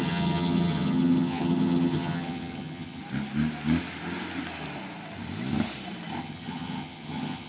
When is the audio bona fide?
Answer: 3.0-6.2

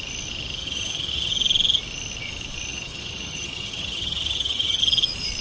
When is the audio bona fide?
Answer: 0.0-0.6; 1.3-2.7; 4.8-5.4

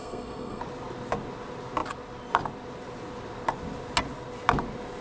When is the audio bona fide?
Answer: 0.6-5.0